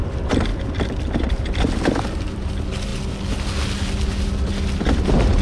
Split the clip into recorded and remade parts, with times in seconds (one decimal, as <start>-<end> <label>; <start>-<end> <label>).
0.0-0.5 remade; 0.5-1.3 recorded; 1.3-2.9 remade; 2.9-4.7 recorded; 4.7-5.4 remade